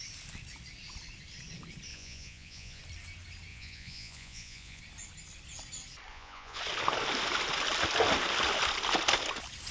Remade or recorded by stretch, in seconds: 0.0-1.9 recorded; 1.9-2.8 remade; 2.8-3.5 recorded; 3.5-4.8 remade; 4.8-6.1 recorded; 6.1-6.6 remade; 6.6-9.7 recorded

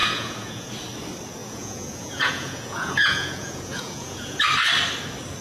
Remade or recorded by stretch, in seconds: 0.0-0.7 remade; 0.7-1.4 recorded; 1.4-4.4 remade; 4.4-5.4 recorded